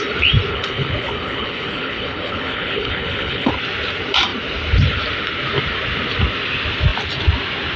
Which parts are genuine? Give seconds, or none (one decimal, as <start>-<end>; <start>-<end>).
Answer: 0.0-0.5; 3.5-7.8

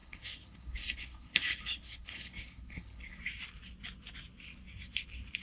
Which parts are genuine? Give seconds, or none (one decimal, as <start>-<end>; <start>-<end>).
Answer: 3.2-5.4

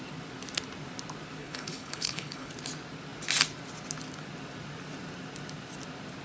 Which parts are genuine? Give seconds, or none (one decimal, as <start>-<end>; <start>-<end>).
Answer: 0.0-1.4; 2.5-6.2

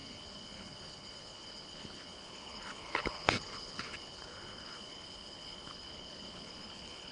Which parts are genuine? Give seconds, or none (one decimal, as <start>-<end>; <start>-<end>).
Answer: none

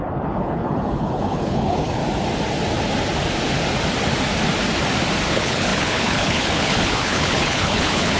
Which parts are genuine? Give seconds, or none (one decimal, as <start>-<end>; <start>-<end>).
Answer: 2.0-5.3

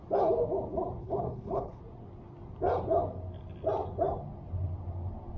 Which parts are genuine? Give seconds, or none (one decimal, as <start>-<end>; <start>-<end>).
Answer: 0.0-1.0; 1.8-5.4